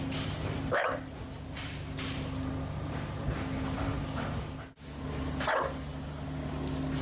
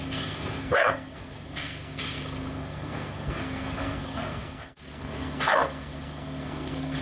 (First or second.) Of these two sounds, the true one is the first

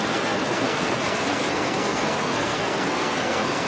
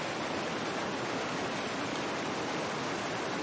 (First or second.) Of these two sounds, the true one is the second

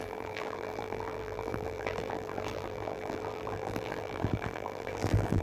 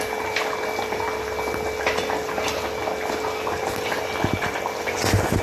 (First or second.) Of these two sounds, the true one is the second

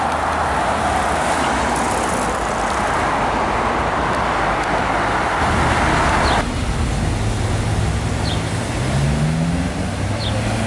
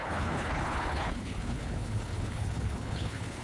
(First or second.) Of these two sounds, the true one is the first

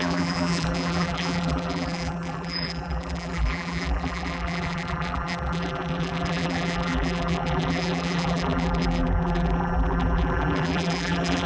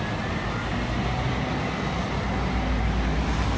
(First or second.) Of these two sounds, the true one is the second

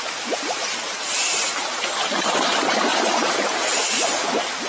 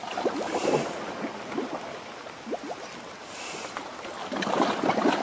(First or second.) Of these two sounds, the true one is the second